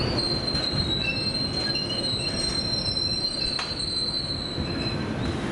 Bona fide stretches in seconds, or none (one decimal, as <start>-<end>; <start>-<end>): 0.0-2.4; 4.7-5.5